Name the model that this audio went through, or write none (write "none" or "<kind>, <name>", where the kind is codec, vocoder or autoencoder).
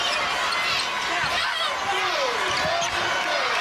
none